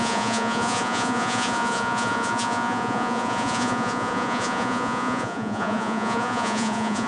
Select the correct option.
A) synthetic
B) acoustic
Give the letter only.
A